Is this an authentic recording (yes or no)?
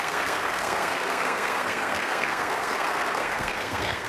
no